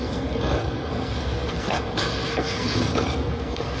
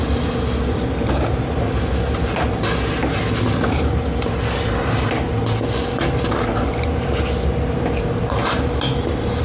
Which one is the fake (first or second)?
first